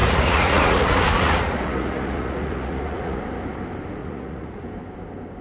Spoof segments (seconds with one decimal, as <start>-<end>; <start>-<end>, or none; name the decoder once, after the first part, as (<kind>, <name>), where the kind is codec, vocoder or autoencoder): 0.0-3.2 (vocoder, Vocos); 4.0-4.7